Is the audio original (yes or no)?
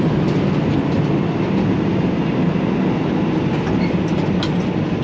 yes